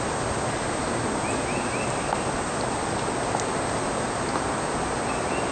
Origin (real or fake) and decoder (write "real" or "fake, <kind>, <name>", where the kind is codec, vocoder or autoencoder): real